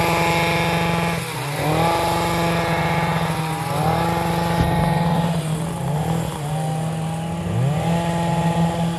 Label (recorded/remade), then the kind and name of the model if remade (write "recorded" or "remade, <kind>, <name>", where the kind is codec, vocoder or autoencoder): recorded